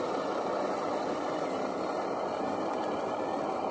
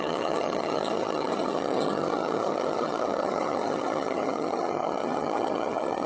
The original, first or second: first